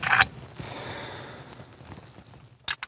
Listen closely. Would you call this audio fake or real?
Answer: real